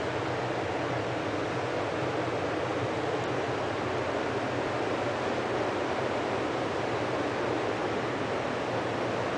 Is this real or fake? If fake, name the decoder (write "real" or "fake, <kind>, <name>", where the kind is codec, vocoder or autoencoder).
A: real